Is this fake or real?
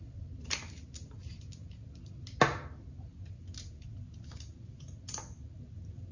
real